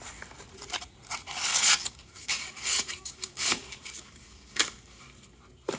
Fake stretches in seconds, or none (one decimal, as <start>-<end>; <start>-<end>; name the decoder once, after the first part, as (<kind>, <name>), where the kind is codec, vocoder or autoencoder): 1.5-5.0 (codec, DAC)